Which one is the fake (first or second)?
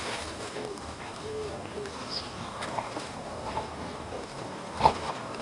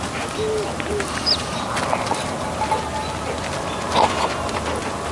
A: first